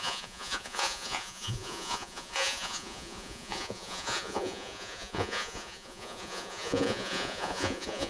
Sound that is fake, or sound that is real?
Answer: fake